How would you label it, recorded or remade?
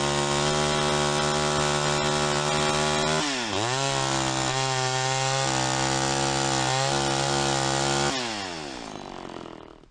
recorded